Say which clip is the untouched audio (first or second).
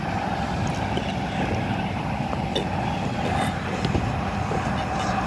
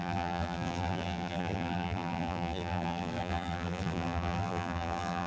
first